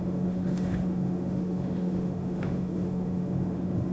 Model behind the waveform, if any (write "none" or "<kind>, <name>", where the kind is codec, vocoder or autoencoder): autoencoder, DAC-VAE